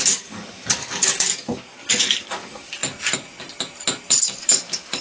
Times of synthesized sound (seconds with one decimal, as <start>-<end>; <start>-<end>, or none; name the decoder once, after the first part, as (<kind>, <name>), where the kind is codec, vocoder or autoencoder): 0.0-2.8 (codec, DAC); 4.2-5.0

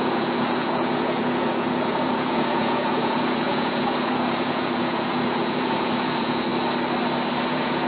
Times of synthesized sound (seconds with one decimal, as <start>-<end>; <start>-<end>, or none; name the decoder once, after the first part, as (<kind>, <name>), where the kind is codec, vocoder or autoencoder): 0.0-6.5 (vocoder, Vocos); 7.5-7.9

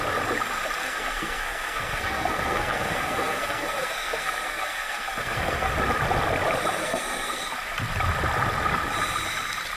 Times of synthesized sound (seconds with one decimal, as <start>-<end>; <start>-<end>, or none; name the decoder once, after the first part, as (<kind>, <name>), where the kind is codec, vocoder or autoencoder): 0.8-5.7 (codec, SNAC); 6.8-7.5

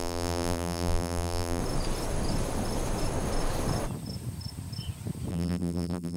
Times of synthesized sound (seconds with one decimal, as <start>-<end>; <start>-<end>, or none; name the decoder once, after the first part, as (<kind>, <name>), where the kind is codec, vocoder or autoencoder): 0.0-1.6 (vocoder, BigVGAN v2); 5.3-6.2

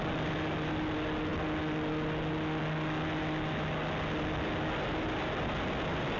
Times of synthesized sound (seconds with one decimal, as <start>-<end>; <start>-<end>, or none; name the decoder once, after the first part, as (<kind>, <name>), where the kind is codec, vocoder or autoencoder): none

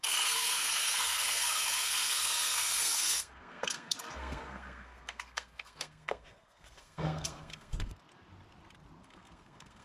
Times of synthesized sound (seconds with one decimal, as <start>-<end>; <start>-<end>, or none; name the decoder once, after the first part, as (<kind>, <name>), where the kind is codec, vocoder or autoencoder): 0.0-8.0 (codec, SNAC); 9.0-9.8

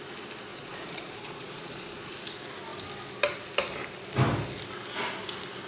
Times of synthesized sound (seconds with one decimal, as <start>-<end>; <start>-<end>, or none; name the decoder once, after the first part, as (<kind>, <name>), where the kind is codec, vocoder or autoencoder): 0.5-2.1 (vocoder, Vocos)